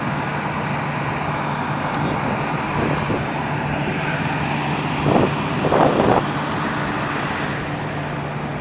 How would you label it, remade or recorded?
recorded